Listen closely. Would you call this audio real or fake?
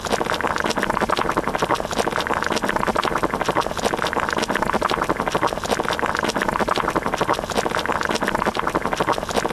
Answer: real